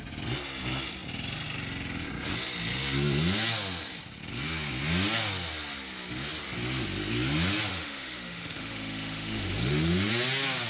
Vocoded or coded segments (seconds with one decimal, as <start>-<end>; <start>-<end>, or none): 7.7-10.1